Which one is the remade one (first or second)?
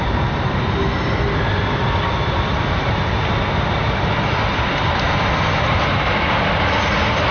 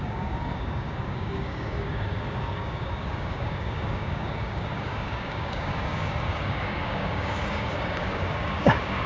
second